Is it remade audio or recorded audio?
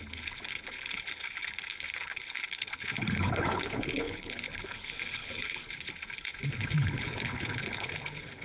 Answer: remade